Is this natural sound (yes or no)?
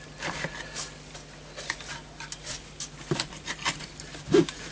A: yes